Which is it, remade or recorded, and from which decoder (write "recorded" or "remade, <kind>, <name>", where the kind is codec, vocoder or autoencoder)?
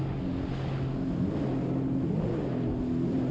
recorded